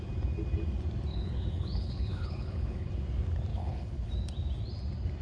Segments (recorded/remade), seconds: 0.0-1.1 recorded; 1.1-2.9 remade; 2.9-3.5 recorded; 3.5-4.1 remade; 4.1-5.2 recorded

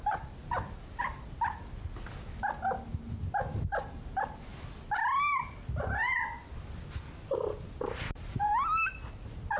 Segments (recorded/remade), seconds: 0.0-9.6 recorded

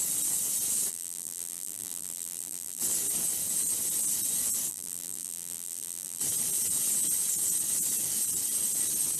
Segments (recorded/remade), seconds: 0.0-0.9 recorded; 0.9-2.8 remade; 2.8-4.7 recorded; 4.7-6.2 remade; 6.2-9.2 recorded

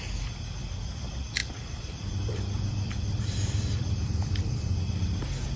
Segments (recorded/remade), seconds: 0.0-1.4 recorded; 1.4-4.8 remade; 4.8-5.6 recorded

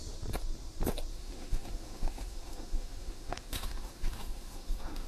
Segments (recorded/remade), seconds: 0.0-1.1 recorded; 1.1-5.1 remade

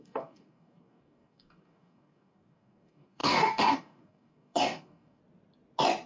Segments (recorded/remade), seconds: 0.0-5.2 remade; 5.2-6.1 recorded